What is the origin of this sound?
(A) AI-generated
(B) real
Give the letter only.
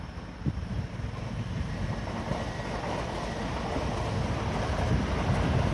B